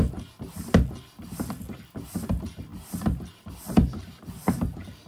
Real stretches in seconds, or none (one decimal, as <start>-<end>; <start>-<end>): 0.0-2.7; 3.3-5.1